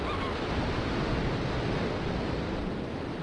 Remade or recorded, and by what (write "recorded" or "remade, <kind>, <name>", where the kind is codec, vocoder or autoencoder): recorded